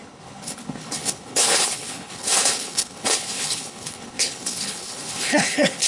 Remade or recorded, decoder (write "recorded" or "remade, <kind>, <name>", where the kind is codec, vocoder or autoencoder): remade, codec, HILCodec